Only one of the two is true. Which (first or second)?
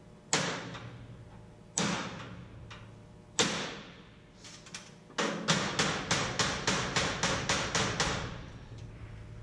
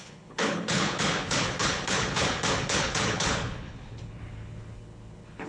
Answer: first